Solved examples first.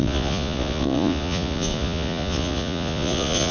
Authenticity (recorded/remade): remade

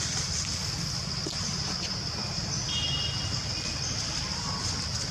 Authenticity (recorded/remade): recorded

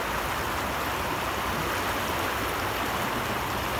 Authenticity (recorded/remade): recorded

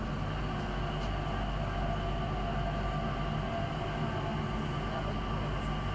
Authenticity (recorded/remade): recorded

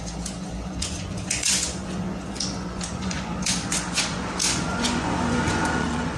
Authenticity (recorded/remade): remade